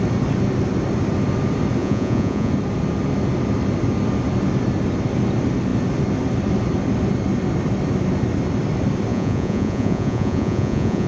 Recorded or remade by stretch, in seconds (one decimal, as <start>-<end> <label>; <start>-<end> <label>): 0.0-1.8 recorded; 1.8-2.5 remade; 2.5-9.1 recorded; 9.1-11.1 remade